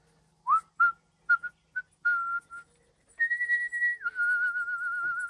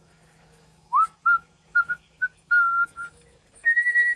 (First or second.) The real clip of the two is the first